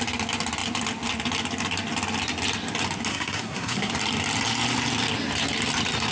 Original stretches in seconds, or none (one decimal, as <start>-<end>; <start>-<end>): 0.0-3.1; 3.9-6.1